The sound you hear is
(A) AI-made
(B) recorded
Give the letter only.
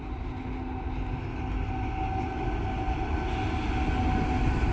B